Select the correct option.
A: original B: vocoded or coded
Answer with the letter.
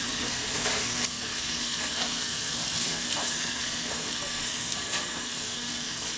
B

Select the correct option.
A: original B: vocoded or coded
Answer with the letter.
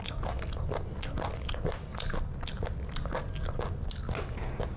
A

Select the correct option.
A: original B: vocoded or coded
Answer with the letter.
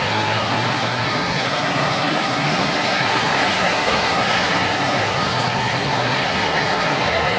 B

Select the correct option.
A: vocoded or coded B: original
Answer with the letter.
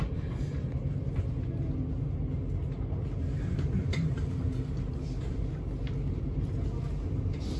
B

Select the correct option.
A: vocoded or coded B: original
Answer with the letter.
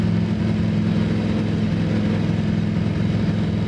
B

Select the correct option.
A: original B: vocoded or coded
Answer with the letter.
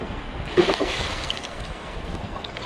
B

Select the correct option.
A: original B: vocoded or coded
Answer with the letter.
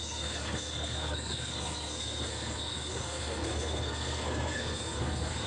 B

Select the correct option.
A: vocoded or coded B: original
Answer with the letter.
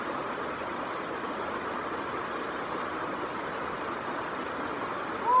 B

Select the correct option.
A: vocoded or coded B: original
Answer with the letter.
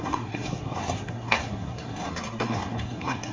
A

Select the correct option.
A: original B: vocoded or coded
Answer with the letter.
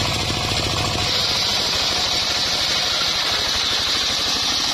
A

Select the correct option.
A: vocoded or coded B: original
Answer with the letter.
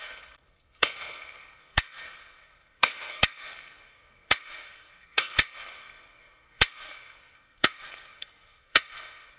A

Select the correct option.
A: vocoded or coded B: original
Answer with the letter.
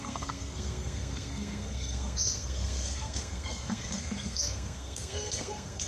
A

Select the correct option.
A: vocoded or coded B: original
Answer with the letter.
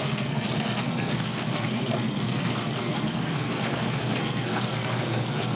A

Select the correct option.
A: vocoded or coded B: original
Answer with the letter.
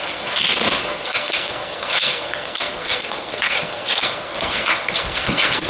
A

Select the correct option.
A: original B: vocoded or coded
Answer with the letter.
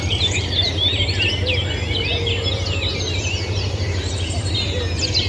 A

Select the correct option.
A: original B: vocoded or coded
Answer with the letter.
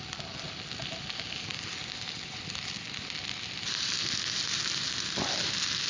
A